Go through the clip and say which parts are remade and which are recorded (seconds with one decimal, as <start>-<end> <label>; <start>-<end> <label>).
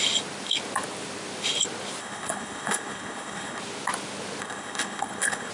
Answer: 0.0-2.0 recorded; 2.0-3.6 remade; 3.6-4.4 recorded; 4.4-5.5 remade